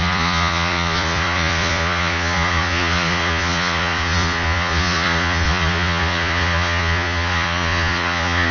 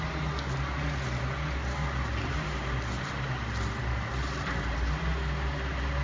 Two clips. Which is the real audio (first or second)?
second